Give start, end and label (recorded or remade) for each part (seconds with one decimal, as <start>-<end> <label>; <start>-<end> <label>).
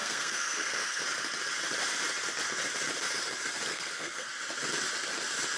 0.0-1.0 remade; 1.0-3.7 recorded; 3.7-4.3 remade; 4.3-5.6 recorded